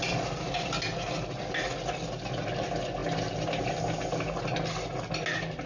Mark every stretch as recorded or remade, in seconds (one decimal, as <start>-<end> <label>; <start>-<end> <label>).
0.0-5.7 recorded